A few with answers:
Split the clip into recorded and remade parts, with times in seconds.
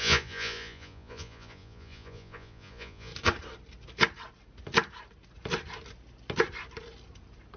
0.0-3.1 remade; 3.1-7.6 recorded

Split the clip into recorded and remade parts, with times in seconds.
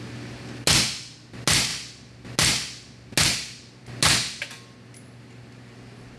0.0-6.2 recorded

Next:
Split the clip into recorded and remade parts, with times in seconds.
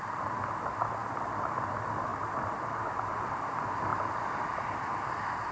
0.0-2.1 recorded; 2.1-2.9 remade; 2.9-3.9 recorded; 3.9-4.6 remade; 4.6-5.5 recorded